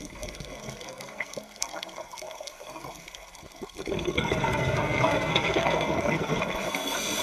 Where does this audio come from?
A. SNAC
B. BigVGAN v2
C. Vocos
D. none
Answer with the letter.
A